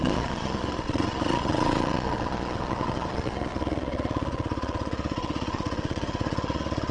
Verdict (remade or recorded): remade